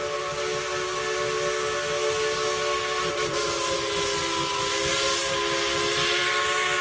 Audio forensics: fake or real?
real